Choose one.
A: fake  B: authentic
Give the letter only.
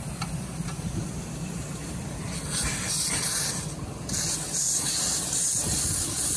B